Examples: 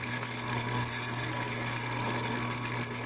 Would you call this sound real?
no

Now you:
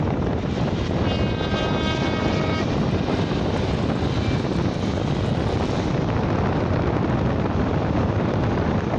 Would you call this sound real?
yes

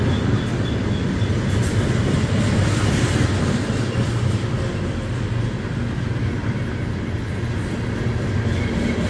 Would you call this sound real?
yes